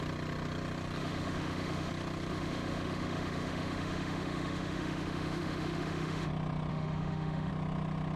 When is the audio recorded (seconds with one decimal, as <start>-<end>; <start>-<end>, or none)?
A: 0.0-1.0; 1.9-2.3; 6.3-6.7; 7.5-8.2